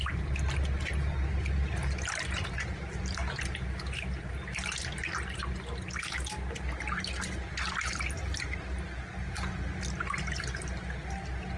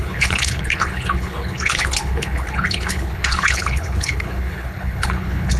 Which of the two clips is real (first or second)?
first